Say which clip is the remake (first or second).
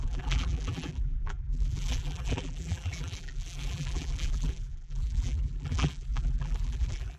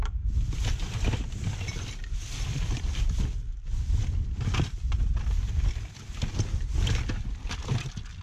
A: first